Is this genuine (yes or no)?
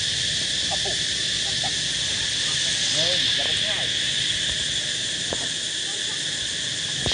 yes